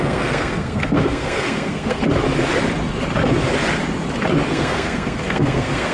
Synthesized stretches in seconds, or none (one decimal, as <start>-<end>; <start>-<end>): 0.0-2.0; 4.5-5.9